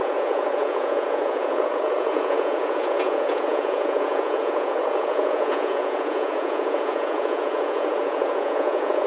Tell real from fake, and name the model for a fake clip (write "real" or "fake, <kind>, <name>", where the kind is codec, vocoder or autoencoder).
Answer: fake, vocoder, Vocos